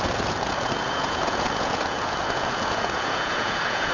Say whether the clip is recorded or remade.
remade